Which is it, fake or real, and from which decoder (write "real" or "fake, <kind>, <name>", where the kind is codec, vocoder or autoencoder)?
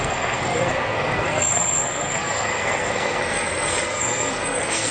fake, codec, SNAC